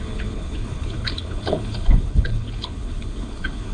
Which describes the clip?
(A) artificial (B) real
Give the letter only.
A